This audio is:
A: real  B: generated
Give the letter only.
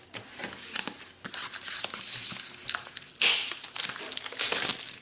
A